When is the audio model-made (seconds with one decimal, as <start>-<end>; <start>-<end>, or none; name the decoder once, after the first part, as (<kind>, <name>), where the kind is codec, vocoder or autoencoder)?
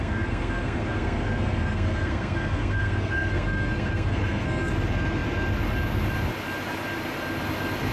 0.0-4.7 (codec, SNAC)